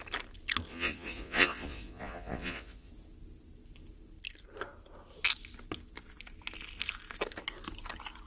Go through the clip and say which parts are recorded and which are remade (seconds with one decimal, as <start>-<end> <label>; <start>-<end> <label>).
0.0-0.7 recorded; 0.7-2.9 remade; 2.9-8.3 recorded